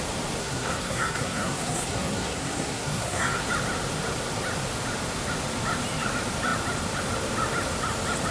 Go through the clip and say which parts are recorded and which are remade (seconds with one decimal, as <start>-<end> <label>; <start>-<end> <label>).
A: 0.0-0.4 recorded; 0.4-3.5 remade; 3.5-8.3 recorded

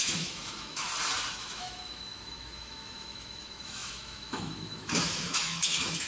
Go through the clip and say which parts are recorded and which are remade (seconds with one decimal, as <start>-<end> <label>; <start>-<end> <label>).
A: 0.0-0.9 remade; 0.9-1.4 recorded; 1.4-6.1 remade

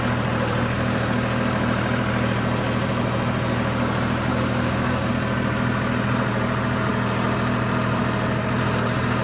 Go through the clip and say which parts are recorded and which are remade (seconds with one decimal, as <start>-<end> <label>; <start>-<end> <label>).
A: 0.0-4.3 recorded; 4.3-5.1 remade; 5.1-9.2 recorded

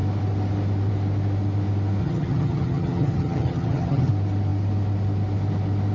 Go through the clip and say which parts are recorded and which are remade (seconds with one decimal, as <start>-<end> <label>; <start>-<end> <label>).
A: 0.0-2.0 recorded; 2.0-4.1 remade; 4.1-5.9 recorded